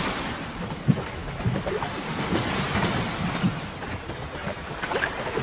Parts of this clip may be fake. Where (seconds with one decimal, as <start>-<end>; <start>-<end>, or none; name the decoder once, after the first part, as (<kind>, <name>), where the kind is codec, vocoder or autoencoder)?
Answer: 0.0-1.2 (vocoder, BigVGAN v2); 4.4-5.4